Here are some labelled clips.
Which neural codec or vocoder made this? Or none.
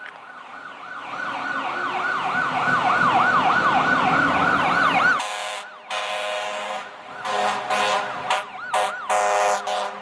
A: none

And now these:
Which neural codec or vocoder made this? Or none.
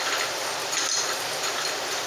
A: none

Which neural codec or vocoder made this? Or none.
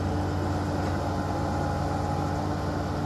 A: none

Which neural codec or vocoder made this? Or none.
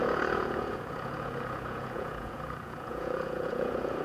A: vocoder, Vocos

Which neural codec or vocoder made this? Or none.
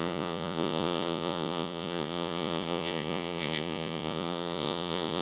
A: vocoder, Vocos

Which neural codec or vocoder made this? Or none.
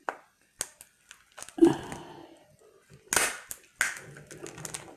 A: none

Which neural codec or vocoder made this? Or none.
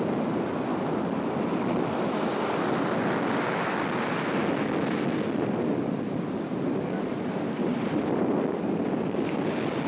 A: none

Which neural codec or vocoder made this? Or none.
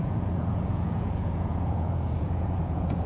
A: vocoder, Vocos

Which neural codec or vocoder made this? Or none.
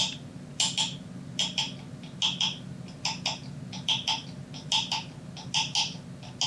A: none